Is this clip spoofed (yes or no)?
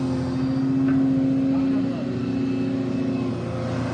no